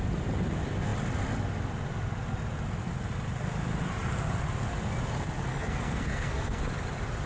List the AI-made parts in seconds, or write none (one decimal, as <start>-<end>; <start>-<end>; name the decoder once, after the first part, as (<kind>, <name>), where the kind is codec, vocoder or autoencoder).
5.5-6.6 (codec, SNAC)